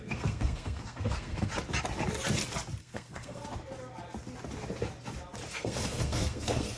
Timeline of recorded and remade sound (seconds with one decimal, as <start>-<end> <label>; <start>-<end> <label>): 0.0-1.5 remade; 1.5-2.8 recorded; 2.8-3.4 remade; 3.4-5.5 recorded; 5.5-6.8 remade